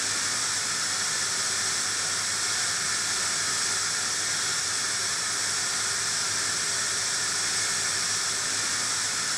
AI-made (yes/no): no